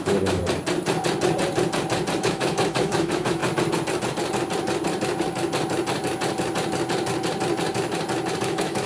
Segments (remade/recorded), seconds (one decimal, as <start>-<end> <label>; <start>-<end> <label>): 0.0-0.4 remade; 0.4-2.2 recorded; 2.2-3.4 remade; 3.4-8.4 recorded; 8.4-8.9 remade